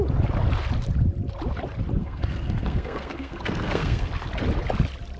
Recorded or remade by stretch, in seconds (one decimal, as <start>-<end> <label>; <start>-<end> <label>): 0.0-2.0 recorded; 2.0-4.1 remade; 4.1-5.2 recorded